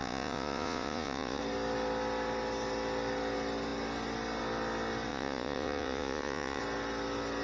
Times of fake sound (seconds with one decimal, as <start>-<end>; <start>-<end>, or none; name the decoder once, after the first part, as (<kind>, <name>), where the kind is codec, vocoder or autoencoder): 0.0-1.4 (vocoder, Vocos); 5.1-6.6